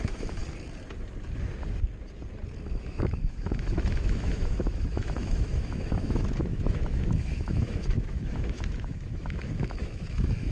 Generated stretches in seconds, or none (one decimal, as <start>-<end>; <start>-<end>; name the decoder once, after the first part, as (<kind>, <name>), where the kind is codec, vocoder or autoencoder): 0.0-0.4 (autoencoder, DAC-VAE); 2.8-10.5

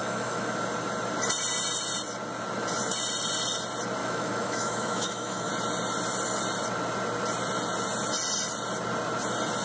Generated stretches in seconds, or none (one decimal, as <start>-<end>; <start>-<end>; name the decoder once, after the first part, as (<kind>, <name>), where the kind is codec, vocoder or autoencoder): 0.0-0.5 (autoencoder, DAC-VAE); 4.0-5.5

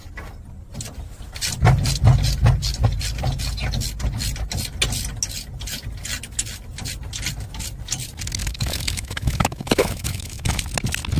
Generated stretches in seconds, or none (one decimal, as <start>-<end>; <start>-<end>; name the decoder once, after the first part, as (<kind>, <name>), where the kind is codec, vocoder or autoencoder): 8.4-10.6 (autoencoder, DAC-VAE)

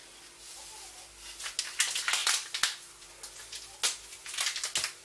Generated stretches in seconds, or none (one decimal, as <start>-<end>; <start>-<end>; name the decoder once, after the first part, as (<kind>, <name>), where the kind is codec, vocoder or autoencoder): none

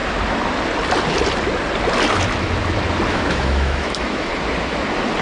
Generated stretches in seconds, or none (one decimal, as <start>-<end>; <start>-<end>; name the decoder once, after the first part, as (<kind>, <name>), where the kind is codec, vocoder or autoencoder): 3.1-4.3 (autoencoder, DAC-VAE)

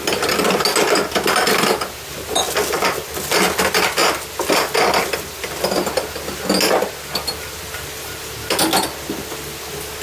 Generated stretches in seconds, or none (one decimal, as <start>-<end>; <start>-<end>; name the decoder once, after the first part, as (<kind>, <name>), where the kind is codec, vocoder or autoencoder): none